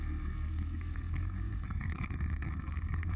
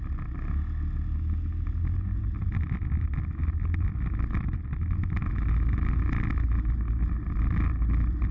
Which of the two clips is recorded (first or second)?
second